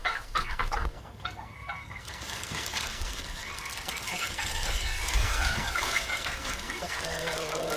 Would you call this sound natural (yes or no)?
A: no